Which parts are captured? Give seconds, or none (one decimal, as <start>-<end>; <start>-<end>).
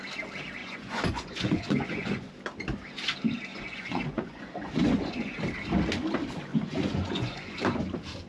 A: 0.0-0.6; 2.3-3.5; 5.4-6.5; 7.6-8.3